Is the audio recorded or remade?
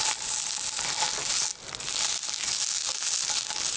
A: recorded